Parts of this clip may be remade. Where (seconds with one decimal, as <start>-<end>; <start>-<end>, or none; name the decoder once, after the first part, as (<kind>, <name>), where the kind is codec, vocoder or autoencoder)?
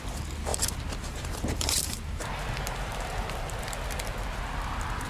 0.5-3.6 (vocoder, BigVGAN v2)